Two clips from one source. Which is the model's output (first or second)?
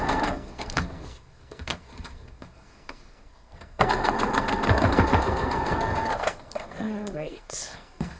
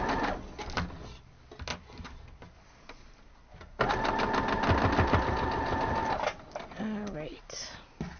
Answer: first